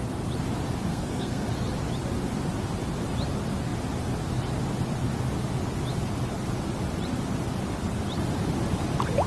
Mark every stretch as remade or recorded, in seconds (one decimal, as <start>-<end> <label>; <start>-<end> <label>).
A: 0.0-0.9 recorded; 0.9-1.5 remade; 1.5-9.3 recorded